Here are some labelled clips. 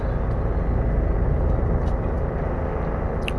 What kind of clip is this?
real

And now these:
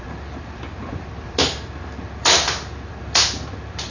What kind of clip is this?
fake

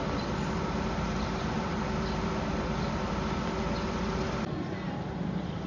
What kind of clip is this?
real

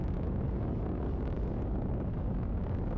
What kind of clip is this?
fake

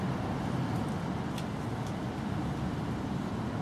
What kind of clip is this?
real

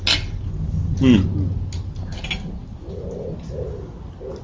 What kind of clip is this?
real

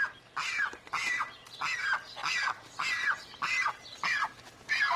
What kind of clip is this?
real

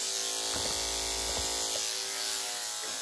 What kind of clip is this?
real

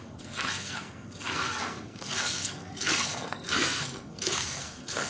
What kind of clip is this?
fake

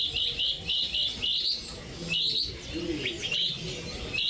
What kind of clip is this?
real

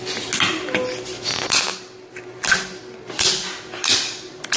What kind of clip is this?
real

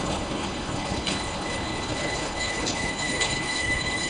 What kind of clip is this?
fake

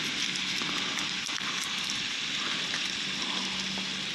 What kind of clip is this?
real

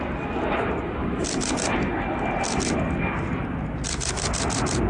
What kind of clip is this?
real